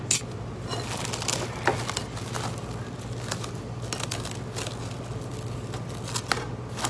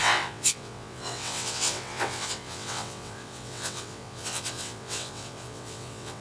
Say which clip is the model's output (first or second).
second